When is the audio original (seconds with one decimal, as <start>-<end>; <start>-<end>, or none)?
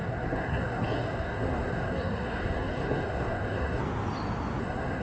3.8-4.6